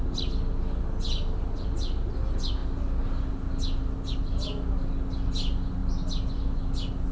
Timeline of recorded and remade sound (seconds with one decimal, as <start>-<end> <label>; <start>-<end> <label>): 0.0-7.1 recorded